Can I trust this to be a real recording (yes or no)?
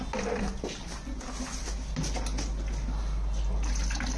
yes